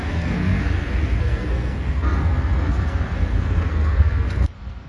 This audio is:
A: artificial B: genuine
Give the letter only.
A